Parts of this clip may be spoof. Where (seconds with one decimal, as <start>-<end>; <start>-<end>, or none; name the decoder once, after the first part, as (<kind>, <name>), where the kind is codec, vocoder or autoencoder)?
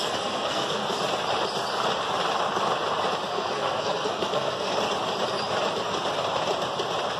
0.0-0.8 (codec, SNAC); 3.3-4.7